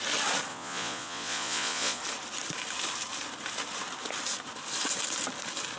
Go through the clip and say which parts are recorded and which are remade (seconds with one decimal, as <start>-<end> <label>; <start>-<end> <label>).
0.0-0.5 recorded; 0.5-2.0 remade; 2.0-5.8 recorded